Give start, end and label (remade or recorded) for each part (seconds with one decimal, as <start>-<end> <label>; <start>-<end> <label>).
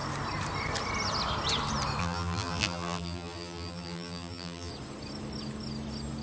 0.0-2.0 recorded; 2.0-4.7 remade; 4.7-6.2 recorded